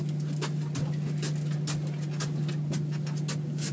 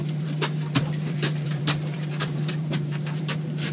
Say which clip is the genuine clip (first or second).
first